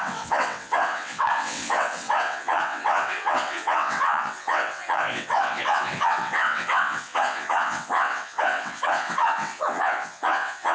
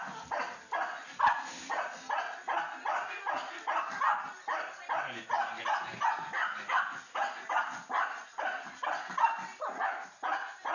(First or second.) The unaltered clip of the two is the second